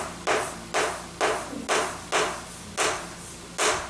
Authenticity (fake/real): real